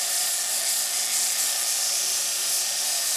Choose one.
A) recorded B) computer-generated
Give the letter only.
A